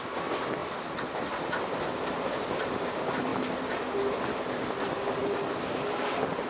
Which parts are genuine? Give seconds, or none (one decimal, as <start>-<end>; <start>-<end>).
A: 0.0-6.5